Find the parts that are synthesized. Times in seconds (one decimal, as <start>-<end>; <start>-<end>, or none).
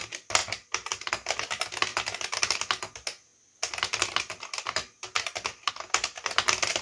0.4-1.1